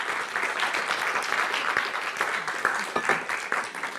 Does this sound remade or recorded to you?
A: recorded